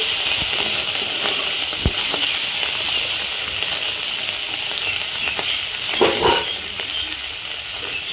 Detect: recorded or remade recorded